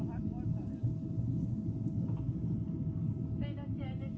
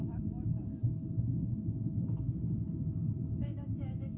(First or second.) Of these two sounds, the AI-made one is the second